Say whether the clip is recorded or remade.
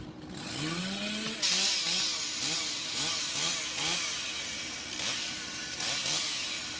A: recorded